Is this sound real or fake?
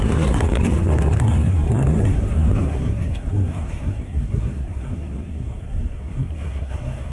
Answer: fake